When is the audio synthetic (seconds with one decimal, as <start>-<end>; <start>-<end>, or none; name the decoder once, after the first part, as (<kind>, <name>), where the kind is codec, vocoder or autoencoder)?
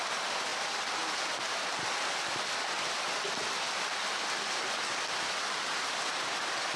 0.5-4.6 (vocoder, BigVGAN v2)